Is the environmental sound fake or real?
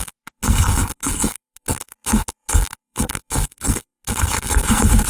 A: fake